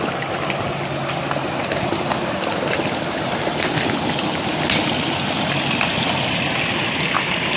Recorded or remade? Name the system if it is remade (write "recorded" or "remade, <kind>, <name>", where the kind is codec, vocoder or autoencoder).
recorded